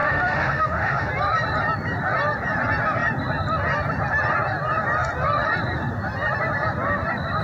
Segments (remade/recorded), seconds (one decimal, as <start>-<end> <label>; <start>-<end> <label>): 0.0-1.1 remade; 1.1-7.4 recorded